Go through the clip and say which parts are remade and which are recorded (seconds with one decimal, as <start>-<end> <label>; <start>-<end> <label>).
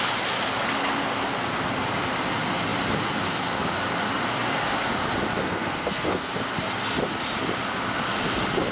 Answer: 0.0-5.4 recorded; 5.4-6.3 remade; 6.3-8.7 recorded